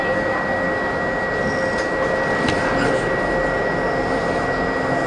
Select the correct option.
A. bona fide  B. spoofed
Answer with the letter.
A